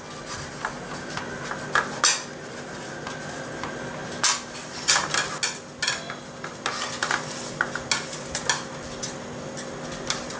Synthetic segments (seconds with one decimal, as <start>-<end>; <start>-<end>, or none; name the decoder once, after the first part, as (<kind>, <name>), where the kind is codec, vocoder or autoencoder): none